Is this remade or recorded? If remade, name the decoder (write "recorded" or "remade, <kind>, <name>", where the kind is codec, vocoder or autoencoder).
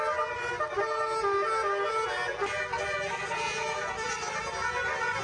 recorded